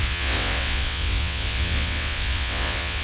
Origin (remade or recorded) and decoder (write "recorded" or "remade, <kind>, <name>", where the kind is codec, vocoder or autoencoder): remade, vocoder, WaveNeXt